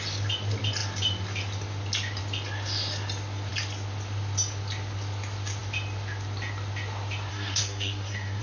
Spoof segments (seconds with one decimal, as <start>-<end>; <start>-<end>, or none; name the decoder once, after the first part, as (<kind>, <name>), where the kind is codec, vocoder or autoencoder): 7.3-8.4 (codec, SNAC)